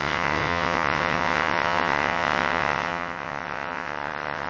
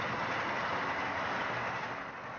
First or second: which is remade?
first